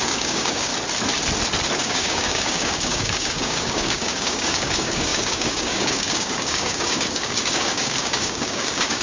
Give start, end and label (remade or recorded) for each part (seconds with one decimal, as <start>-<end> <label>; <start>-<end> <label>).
0.0-0.7 remade; 0.7-1.8 recorded; 1.8-9.0 remade